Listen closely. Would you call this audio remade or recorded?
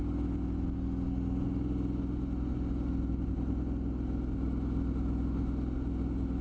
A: recorded